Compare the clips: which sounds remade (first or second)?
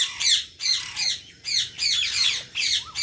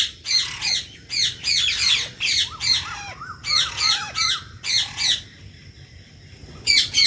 first